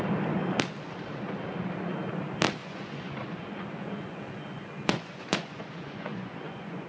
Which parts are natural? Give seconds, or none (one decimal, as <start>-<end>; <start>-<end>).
0.0-2.6